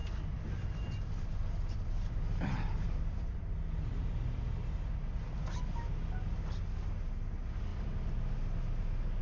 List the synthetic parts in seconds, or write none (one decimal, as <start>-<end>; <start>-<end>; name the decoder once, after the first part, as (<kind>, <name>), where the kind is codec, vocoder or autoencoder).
0.0-3.4 (vocoder, BigVGAN v2)